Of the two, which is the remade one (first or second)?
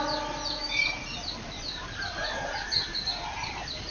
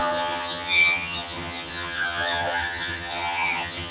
second